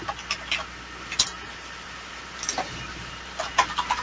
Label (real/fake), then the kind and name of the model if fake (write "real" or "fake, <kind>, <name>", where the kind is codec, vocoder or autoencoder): real